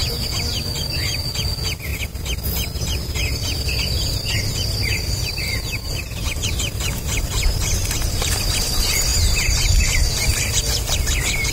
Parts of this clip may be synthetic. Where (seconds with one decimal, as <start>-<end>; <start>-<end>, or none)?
5.5-8.1; 9.1-11.5